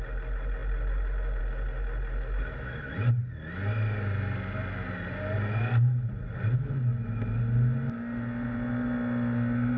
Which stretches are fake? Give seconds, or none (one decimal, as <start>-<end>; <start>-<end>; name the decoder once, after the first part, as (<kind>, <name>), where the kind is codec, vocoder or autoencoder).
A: none